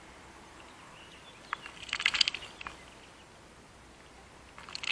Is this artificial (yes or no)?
no